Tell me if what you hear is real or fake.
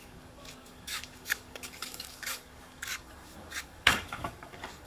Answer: fake